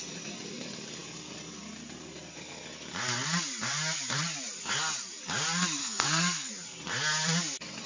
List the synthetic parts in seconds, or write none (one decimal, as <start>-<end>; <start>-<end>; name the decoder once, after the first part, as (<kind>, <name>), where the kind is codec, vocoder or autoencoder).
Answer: 5.8-6.5 (codec, SNAC)